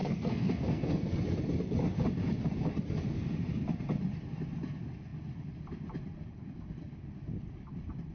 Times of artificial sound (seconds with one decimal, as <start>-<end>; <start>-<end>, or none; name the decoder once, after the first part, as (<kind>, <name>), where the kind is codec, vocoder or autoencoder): 0.0-1.2 (codec, SNAC)